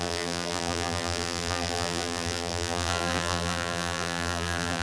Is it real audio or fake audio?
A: fake